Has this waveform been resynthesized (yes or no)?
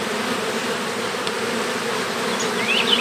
no